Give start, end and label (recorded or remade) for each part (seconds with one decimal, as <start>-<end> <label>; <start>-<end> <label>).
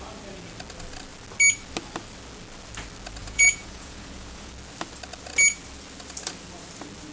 0.0-3.2 recorded; 3.2-4.5 remade; 4.5-7.1 recorded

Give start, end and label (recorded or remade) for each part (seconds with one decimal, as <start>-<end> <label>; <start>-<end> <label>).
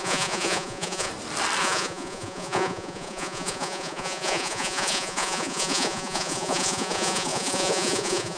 0.0-1.1 remade; 1.1-1.6 recorded; 1.6-8.4 remade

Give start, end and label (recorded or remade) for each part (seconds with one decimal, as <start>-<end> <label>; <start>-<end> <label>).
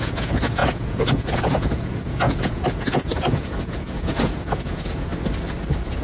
0.0-5.1 remade; 5.1-6.0 recorded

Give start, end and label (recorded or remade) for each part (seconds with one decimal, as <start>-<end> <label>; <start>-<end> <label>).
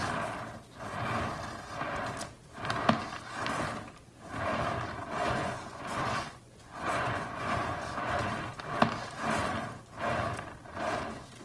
0.0-5.2 recorded; 5.2-8.1 remade; 8.1-11.4 recorded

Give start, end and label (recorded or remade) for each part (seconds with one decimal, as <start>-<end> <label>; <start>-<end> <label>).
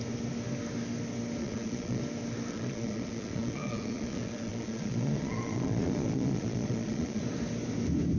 0.0-1.4 recorded; 1.4-2.0 remade; 2.0-2.5 recorded; 2.5-7.2 remade; 7.2-8.2 recorded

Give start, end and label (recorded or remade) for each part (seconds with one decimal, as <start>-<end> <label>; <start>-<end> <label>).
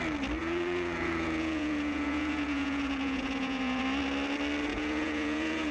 0.0-0.4 recorded; 0.4-3.8 remade; 3.8-4.7 recorded; 4.7-5.7 remade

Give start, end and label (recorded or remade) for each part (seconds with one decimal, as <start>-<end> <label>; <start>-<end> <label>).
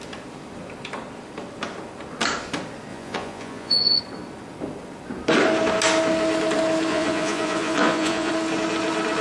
0.0-2.9 recorded; 2.9-4.0 remade; 4.0-6.9 recorded; 6.9-8.3 remade; 8.3-9.2 recorded